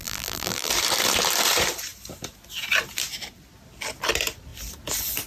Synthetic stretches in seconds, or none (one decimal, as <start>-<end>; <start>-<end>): 0.0-0.7